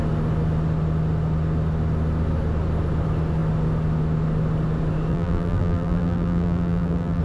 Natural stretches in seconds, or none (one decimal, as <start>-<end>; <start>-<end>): 0.0-5.1